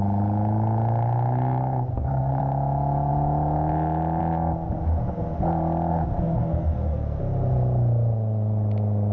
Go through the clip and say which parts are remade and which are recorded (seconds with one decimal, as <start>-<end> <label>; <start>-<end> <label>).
0.0-1.9 recorded; 1.9-2.4 remade; 2.4-5.9 recorded; 5.9-7.2 remade; 7.2-9.1 recorded